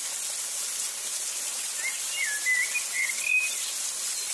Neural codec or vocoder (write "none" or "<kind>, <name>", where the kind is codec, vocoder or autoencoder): none